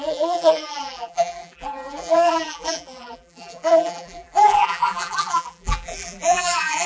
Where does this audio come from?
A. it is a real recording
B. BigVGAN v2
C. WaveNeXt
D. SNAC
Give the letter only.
B